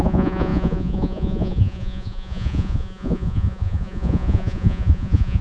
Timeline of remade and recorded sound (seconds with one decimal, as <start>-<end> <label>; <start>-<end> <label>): 0.0-5.4 remade